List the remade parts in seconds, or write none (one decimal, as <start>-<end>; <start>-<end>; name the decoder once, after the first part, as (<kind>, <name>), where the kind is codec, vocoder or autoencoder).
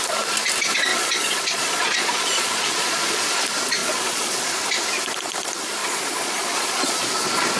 0.9-3.3 (vocoder, Vocos); 3.8-4.5; 5.8-7.1